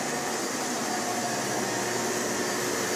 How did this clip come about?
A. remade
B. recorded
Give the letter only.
B